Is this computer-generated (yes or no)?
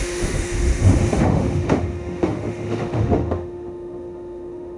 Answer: yes